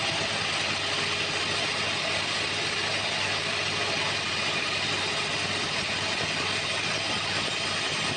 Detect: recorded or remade recorded